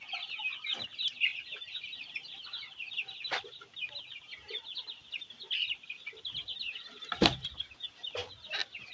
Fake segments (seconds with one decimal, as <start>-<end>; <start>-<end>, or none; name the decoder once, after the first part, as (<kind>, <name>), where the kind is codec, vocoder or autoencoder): 1.3-2.9 (vocoder, BigVGAN v2); 6.4-7.7